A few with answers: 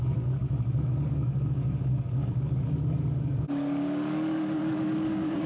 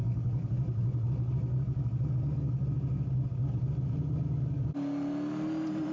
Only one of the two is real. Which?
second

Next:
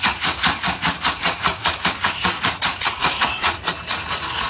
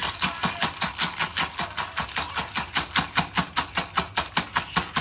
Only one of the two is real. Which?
second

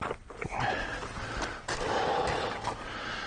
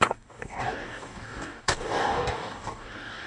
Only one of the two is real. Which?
first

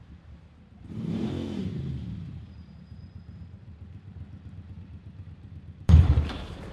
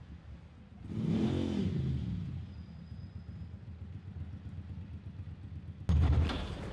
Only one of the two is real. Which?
second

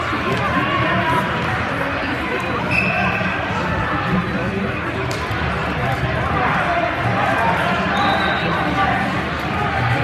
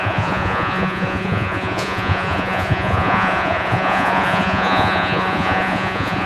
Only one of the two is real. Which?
first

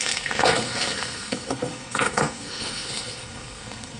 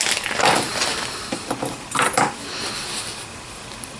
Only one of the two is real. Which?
second